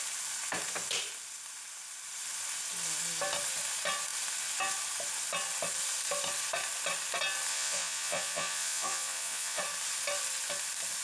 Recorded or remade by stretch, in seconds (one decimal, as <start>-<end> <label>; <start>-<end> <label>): 0.0-7.5 recorded; 7.5-9.6 remade; 9.6-11.0 recorded

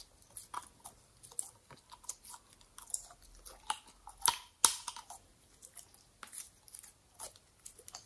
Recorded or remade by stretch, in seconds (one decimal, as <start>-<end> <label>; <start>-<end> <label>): 0.0-8.1 recorded

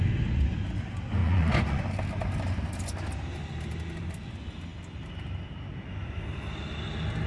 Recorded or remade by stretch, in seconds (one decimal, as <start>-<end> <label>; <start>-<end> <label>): 0.0-1.2 recorded; 1.2-1.8 remade; 1.8-7.3 recorded

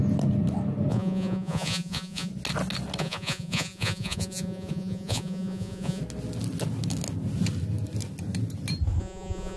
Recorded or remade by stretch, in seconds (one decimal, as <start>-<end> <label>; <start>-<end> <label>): 0.0-0.9 recorded; 0.9-2.3 remade; 2.3-3.0 recorded; 3.0-6.0 remade; 6.0-9.0 recorded; 9.0-9.6 remade

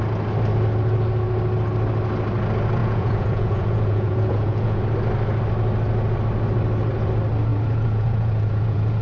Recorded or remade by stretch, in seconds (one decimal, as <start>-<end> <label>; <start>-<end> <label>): 0.0-2.8 recorded; 2.8-4.8 remade; 4.8-7.5 recorded; 7.5-9.0 remade

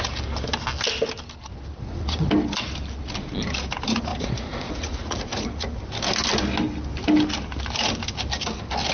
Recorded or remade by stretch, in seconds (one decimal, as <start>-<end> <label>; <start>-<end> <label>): 0.0-1.5 recorded; 1.5-2.3 remade; 2.3-4.1 recorded; 4.1-5.8 remade; 5.8-8.9 recorded